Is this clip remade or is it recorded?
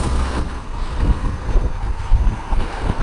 remade